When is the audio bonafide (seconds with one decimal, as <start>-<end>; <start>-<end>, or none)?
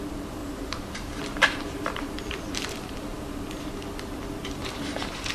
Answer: 0.0-0.4; 3.6-4.4